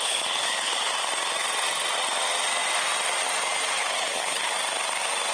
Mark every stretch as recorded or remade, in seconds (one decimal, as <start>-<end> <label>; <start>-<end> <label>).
0.0-0.9 remade; 0.9-3.8 recorded; 3.8-4.5 remade; 4.5-5.3 recorded